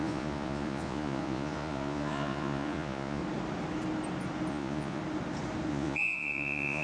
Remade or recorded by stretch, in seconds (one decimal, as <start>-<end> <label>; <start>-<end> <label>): 0.0-3.2 remade; 3.2-4.5 recorded; 4.5-5.0 remade; 5.0-5.7 recorded; 5.7-6.8 remade